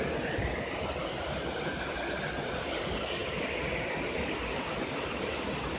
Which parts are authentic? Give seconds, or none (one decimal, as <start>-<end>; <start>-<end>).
0.0-5.8